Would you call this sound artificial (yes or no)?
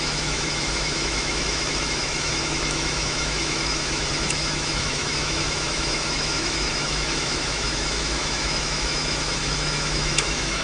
yes